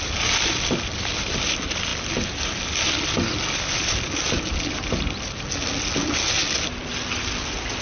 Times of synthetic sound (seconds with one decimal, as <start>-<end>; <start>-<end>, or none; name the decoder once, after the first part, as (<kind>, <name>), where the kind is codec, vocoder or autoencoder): none